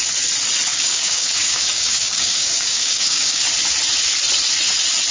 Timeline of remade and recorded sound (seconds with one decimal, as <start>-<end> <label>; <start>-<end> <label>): 0.0-0.7 recorded; 0.7-3.4 remade; 3.4-5.1 recorded